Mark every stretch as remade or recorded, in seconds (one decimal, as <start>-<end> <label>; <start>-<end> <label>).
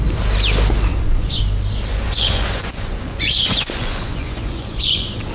0.0-0.9 recorded; 0.9-1.4 remade; 1.4-1.9 recorded; 1.9-5.3 remade